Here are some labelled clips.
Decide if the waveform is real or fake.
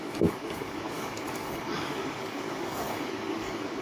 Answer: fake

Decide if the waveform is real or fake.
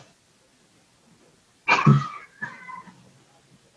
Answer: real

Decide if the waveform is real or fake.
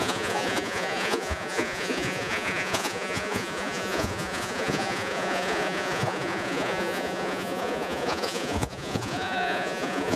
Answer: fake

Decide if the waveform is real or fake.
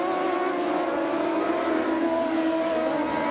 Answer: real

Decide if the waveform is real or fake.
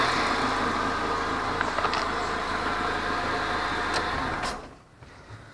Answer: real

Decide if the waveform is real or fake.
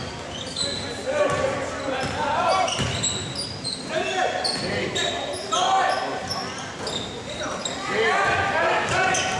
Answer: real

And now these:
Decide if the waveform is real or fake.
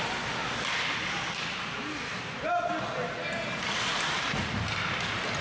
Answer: real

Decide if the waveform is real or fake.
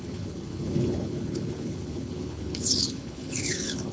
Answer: fake